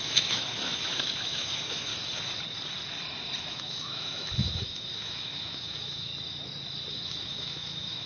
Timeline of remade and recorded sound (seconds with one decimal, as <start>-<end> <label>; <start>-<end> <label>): 0.0-1.9 remade; 1.9-3.4 recorded; 3.4-6.1 remade; 6.1-6.9 recorded; 6.9-8.1 remade